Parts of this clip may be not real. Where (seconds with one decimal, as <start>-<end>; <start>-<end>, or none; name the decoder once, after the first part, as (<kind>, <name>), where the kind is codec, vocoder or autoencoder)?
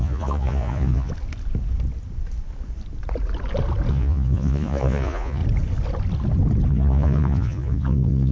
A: 0.0-1.1 (vocoder, Vocos); 3.9-5.4; 6.7-8.3